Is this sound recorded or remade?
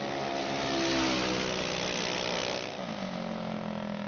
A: recorded